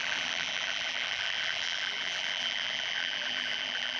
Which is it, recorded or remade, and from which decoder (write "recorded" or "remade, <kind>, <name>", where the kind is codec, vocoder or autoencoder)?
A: remade, vocoder, BigVGAN v2